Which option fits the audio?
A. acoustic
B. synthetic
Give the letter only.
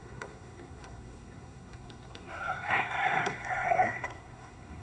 B